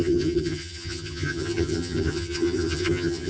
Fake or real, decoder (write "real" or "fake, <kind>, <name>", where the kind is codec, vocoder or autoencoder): fake, vocoder, HiFi-GAN